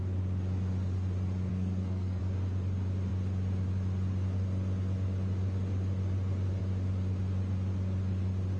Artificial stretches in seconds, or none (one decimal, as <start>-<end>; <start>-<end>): 1.5-2.2